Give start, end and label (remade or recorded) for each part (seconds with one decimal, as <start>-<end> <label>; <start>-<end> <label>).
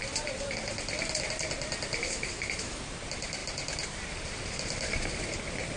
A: 0.0-2.0 recorded; 2.0-2.8 remade; 2.8-5.8 recorded